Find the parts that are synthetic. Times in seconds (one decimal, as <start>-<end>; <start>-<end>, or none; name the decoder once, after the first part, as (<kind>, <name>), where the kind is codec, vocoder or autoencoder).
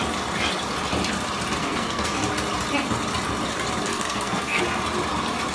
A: 1.6-2.2 (codec, SNAC); 3.9-4.6